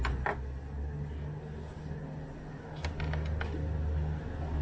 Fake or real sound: real